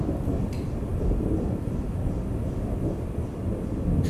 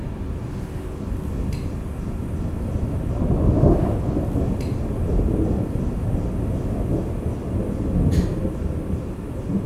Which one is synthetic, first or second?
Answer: first